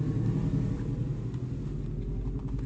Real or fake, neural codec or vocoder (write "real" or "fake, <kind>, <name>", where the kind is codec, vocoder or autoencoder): real